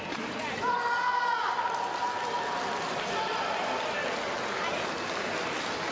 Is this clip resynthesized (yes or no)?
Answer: no